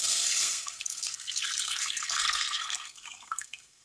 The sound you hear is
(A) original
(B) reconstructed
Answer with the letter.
B